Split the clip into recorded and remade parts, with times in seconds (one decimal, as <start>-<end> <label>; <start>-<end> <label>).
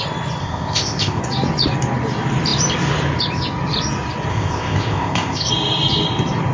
0.0-0.4 recorded; 0.4-1.2 remade; 1.2-4.3 recorded; 4.3-5.5 remade; 5.5-6.5 recorded